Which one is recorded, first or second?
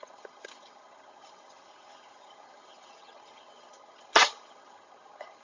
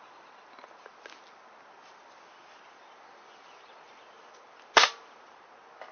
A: second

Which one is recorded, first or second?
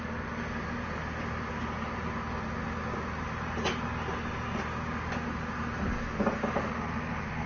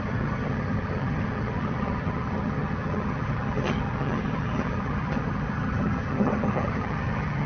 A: first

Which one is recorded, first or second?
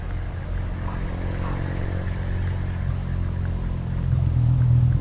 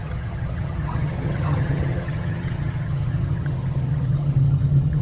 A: first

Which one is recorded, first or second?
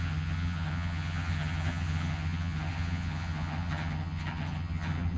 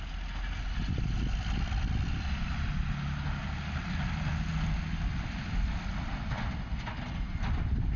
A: second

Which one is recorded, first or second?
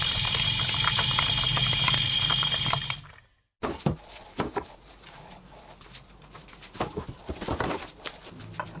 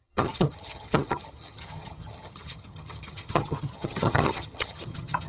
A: first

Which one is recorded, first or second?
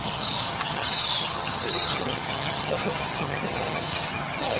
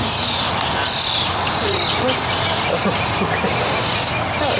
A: second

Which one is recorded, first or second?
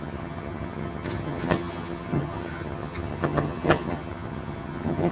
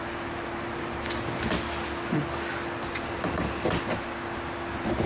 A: second